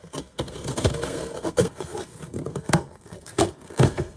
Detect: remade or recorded remade